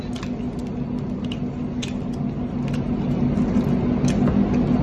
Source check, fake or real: real